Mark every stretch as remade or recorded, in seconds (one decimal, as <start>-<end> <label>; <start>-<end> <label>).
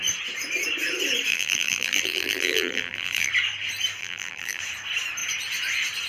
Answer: 0.0-1.3 recorded; 1.3-3.3 remade; 3.3-4.0 recorded; 4.0-4.6 remade; 4.6-6.1 recorded